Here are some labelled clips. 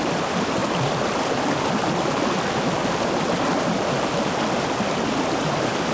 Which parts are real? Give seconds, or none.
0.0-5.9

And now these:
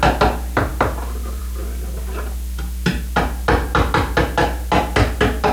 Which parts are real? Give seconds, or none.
0.0-5.5

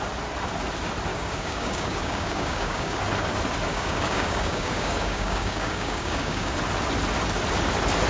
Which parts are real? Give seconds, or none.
0.0-1.1; 3.0-3.7; 6.5-8.1